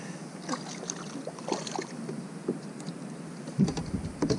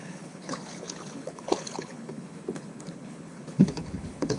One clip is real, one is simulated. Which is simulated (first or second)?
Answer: second